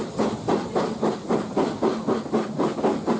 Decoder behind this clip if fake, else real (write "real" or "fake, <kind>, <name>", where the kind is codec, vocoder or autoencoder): real